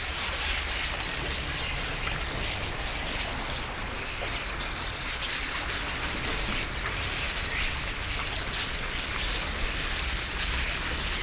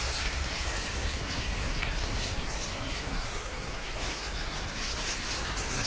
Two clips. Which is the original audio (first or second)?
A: first